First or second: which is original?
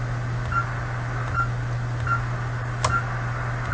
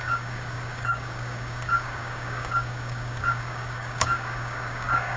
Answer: first